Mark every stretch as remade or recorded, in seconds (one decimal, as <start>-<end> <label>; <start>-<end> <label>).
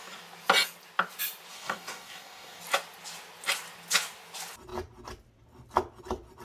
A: 0.0-1.5 recorded; 1.5-2.6 remade; 2.6-6.4 recorded